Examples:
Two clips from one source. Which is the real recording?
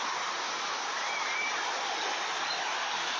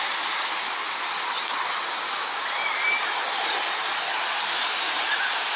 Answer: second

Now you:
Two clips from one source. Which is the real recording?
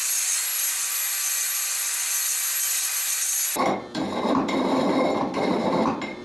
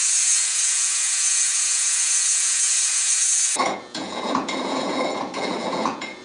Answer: first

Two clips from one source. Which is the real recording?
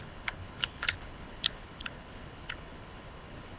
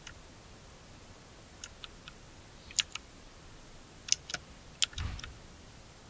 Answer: second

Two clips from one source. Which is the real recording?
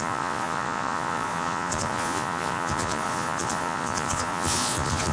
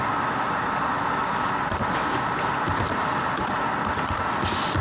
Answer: second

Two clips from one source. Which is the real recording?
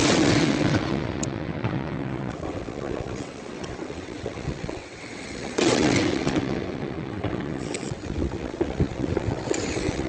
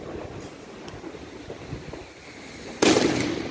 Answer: second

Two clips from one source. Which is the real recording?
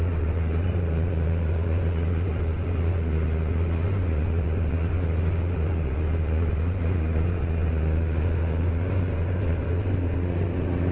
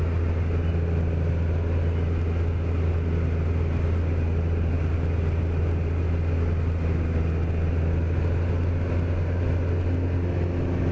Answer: second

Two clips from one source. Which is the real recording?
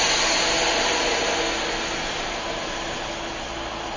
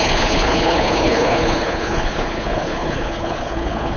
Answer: first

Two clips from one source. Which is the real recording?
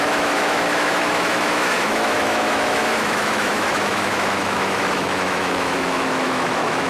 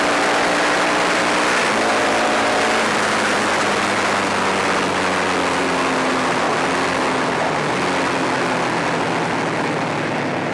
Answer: second